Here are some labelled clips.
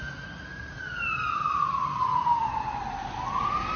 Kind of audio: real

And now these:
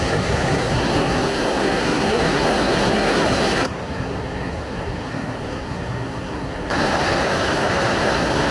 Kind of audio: fake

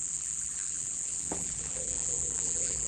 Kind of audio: fake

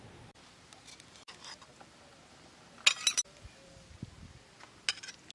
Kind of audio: real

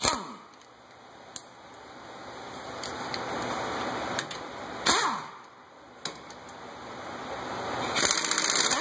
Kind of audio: real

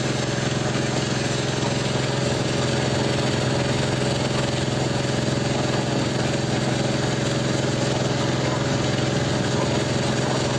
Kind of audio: real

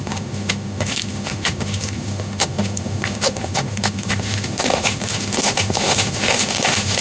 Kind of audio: fake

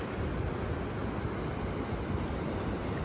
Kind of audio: real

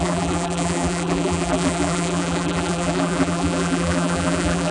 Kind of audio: fake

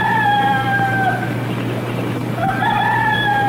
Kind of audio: real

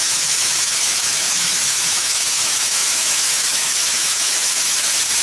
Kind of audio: fake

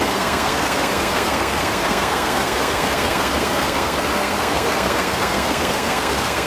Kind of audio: fake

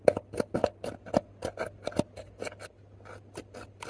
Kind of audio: real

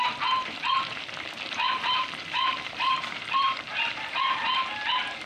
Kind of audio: fake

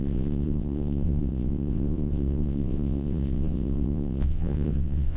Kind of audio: fake